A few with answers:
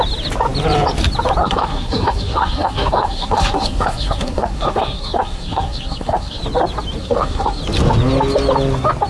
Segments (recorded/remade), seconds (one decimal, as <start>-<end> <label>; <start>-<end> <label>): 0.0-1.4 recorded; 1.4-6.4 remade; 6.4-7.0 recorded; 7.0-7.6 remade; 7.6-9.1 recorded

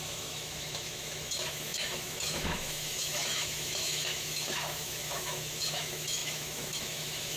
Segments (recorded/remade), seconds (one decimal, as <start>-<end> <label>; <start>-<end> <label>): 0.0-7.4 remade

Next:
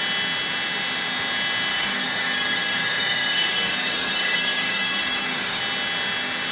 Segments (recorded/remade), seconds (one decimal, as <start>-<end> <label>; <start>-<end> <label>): 0.0-1.7 recorded; 1.7-5.6 remade; 5.6-6.5 recorded

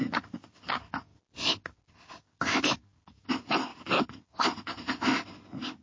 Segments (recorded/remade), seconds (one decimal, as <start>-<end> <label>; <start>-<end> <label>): 0.0-5.8 recorded

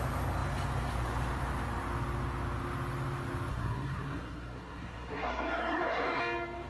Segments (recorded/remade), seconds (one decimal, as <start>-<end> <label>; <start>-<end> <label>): 0.0-3.5 recorded; 3.5-6.2 remade; 6.2-6.7 recorded